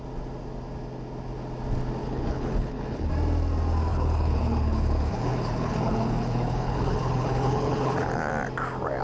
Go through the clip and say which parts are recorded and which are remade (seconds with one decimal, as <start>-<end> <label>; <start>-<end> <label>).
0.0-2.0 recorded; 2.0-3.1 remade; 3.1-3.9 recorded; 3.9-8.3 remade; 8.3-9.0 recorded